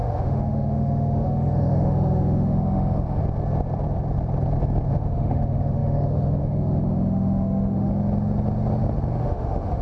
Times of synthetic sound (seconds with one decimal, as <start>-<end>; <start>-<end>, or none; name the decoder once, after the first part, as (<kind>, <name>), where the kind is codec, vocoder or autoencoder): 0.0-3.2 (autoencoder, DAC-VAE); 4.9-7.9; 9.2-9.8